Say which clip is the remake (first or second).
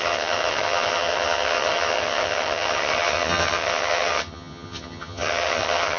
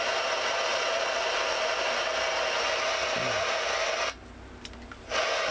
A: first